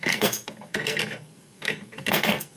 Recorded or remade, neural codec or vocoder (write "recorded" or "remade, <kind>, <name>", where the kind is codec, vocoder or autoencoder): remade, codec, SNAC